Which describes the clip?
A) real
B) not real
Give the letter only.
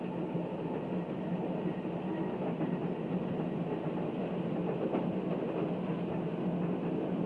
A